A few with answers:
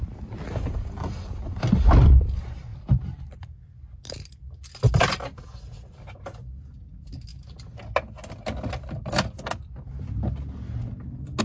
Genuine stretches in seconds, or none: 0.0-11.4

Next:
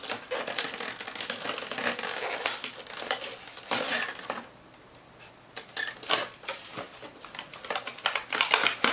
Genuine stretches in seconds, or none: 0.0-6.5; 7.5-8.9

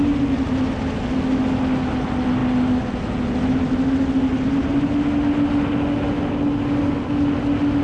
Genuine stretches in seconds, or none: 0.0-7.8